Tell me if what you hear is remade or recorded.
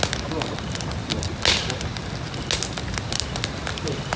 recorded